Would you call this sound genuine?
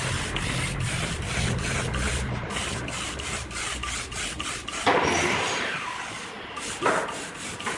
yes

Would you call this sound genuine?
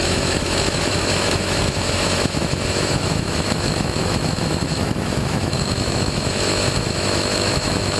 no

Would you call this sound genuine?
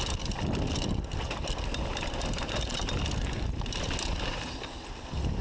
yes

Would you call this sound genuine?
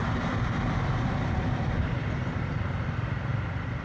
no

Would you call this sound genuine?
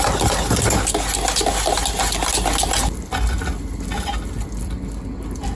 yes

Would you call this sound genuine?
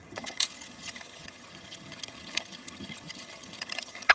no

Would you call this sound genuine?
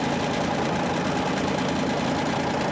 yes